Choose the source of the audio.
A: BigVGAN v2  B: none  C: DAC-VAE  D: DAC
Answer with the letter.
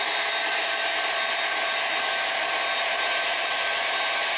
B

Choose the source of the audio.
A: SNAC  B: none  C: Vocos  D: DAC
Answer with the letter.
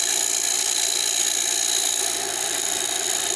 B